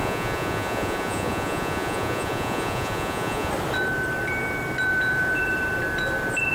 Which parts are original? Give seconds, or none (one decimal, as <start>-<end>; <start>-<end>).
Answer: 3.5-6.5